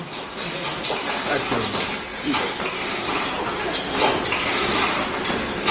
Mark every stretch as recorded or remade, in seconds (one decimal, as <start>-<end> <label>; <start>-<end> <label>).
0.0-5.7 remade